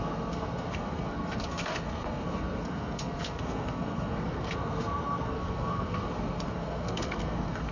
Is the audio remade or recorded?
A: remade